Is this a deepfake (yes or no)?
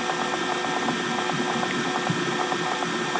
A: no